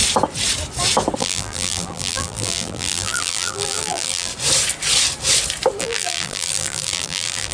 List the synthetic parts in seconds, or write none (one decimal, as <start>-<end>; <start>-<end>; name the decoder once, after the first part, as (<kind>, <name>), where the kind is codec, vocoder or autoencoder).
1.2-4.3 (vocoder, BigVGAN v2); 5.8-7.5